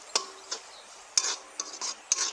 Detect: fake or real real